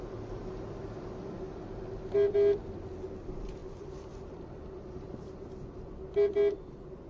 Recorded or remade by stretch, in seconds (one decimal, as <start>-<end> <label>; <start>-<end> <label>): 0.0-3.6 recorded; 3.6-6.0 remade; 6.0-7.1 recorded